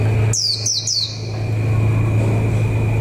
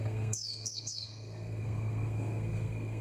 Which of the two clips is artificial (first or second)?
second